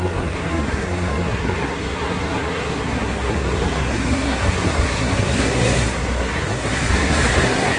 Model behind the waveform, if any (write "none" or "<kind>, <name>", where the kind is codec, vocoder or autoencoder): codec, SNAC